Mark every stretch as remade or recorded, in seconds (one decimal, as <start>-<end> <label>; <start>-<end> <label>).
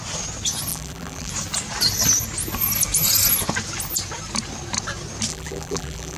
0.0-0.7 recorded; 0.7-1.3 remade; 1.3-5.3 recorded; 5.3-6.2 remade